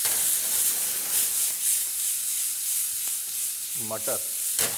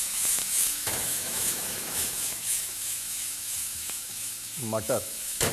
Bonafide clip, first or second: first